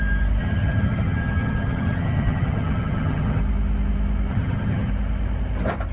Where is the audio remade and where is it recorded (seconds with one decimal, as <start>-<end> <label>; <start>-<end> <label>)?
0.0-0.4 recorded; 0.4-3.4 remade; 3.4-4.3 recorded; 4.3-4.9 remade; 4.9-5.9 recorded